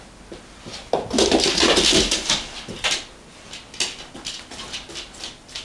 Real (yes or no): yes